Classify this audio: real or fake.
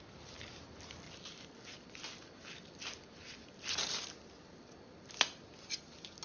real